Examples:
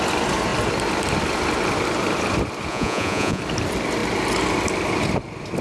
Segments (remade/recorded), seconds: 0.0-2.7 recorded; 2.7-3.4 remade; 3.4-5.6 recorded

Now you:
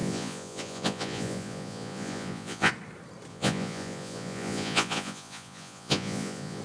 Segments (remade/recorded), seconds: 0.0-2.7 remade; 2.7-3.3 recorded; 3.3-6.6 remade

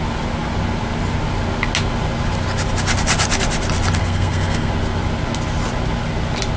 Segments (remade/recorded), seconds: 0.0-4.0 recorded; 4.0-4.7 remade; 4.7-6.6 recorded

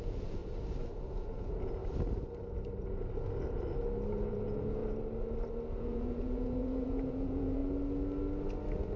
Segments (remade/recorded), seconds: 0.0-0.4 remade; 0.4-1.1 recorded; 1.1-1.8 remade; 1.8-4.3 recorded; 4.3-4.8 remade; 4.8-5.8 recorded; 5.8-7.6 remade; 7.6-9.0 recorded

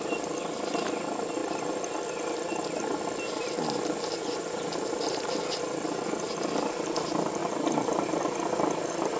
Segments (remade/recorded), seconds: 0.0-7.4 recorded; 7.4-8.2 remade; 8.2-9.2 recorded